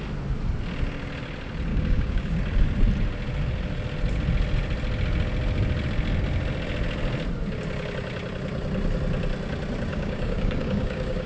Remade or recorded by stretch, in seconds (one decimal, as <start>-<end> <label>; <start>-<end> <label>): 0.0-1.7 recorded; 1.7-2.4 remade; 2.4-9.9 recorded; 9.9-11.3 remade